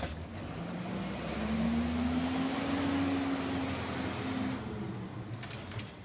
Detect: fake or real real